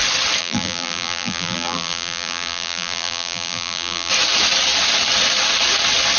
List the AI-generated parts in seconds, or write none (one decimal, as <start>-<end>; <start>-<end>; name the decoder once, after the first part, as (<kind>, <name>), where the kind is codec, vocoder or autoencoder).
0.4-4.1 (vocoder, BigVGAN v2)